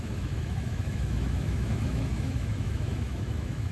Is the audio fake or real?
fake